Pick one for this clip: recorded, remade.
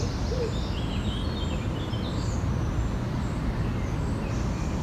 recorded